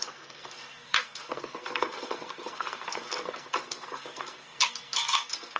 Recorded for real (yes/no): no